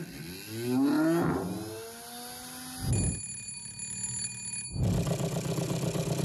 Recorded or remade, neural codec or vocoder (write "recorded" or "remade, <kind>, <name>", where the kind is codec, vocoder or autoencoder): recorded